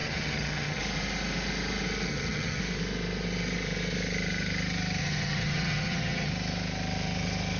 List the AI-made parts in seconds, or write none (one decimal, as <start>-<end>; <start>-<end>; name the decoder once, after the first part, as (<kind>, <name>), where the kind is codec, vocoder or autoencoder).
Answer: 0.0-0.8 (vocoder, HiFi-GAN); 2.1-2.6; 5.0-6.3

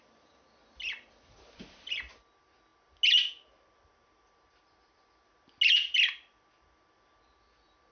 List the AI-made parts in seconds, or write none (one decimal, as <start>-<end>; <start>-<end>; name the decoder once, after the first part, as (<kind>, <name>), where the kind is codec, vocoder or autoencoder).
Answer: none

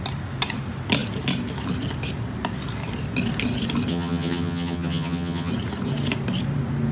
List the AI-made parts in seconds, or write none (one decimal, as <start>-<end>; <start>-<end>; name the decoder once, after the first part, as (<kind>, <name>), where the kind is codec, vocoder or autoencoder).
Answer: 3.9-5.5 (vocoder, HiFi-GAN)

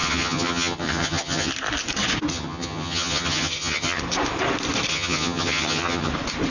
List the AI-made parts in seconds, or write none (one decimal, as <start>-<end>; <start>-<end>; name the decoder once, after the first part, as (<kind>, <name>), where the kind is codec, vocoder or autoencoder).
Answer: 0.0-1.5 (vocoder, HiFi-GAN); 2.3-4.0; 4.9-6.1

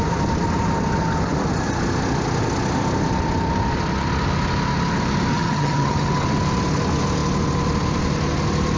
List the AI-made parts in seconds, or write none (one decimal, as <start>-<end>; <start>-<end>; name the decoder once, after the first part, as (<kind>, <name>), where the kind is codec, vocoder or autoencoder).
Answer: 5.3-6.1 (vocoder, HiFi-GAN)